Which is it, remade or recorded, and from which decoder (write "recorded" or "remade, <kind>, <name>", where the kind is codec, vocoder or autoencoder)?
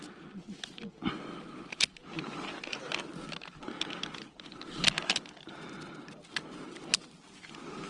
recorded